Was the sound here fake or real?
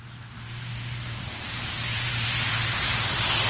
fake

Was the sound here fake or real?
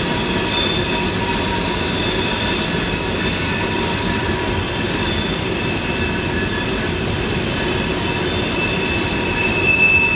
real